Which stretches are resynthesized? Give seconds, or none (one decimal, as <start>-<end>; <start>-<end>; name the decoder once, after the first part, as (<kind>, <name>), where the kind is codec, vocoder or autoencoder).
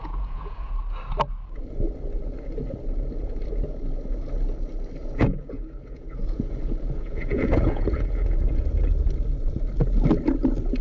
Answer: 0.0-0.7 (vocoder, Vocos); 5.0-8.8